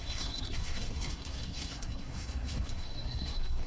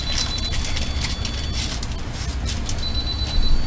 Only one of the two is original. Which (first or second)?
second